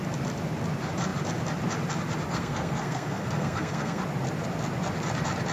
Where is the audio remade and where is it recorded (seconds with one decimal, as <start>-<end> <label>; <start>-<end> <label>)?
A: 0.0-2.3 recorded; 2.3-4.0 remade; 4.0-5.5 recorded